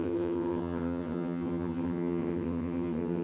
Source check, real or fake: fake